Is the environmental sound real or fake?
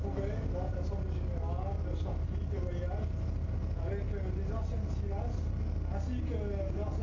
real